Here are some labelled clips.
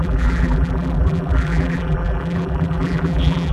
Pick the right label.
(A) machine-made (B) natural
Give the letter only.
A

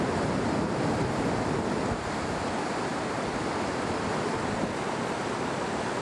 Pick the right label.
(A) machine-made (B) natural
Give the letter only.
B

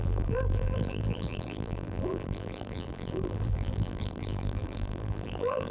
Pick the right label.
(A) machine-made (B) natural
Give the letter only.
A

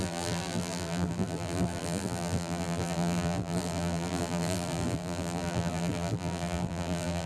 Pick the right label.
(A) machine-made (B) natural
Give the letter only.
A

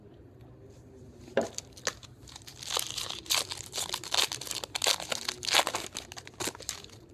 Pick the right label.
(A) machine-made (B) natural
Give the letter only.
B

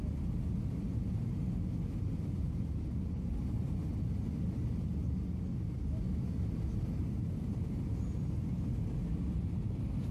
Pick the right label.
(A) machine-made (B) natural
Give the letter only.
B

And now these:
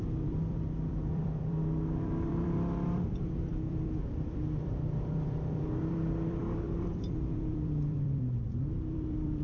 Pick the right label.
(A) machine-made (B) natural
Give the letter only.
A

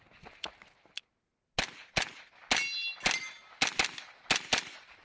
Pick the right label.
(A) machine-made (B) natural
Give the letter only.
B